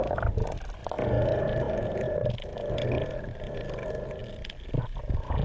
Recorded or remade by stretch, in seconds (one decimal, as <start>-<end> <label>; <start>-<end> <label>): 0.0-5.4 recorded